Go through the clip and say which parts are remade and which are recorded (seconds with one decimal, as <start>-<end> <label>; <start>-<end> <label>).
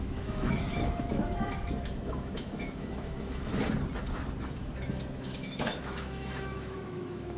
0.0-3.5 remade; 3.5-4.6 recorded; 4.6-7.4 remade